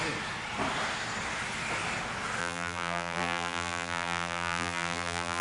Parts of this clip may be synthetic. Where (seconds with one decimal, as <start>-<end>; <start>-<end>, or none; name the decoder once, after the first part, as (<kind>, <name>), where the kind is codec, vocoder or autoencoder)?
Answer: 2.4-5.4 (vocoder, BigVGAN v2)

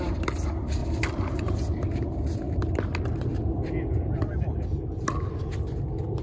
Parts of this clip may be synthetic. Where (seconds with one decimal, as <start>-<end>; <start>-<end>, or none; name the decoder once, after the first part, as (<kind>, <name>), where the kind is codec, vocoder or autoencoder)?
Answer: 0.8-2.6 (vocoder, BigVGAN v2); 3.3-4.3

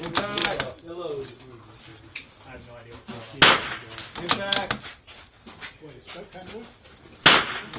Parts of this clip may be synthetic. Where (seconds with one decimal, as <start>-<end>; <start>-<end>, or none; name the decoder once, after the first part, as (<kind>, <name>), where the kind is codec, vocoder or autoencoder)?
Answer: 0.4-1.4 (vocoder, BigVGAN v2)

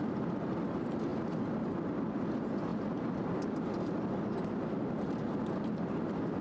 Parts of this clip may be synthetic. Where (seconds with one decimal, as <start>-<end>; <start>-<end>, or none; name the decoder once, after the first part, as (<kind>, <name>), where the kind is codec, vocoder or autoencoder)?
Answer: none